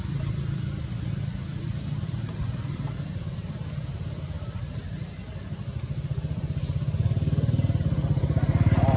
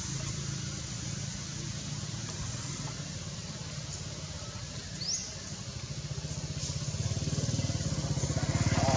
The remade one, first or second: first